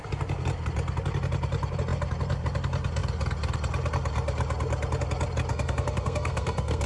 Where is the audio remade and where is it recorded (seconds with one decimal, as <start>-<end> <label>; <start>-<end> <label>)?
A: 0.0-5.5 recorded; 5.5-6.9 remade